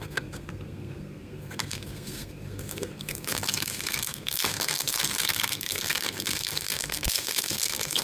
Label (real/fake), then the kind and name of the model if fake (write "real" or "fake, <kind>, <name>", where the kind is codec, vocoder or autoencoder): fake, codec, SNAC